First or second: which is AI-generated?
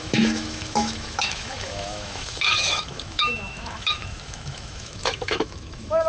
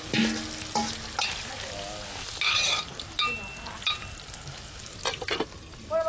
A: first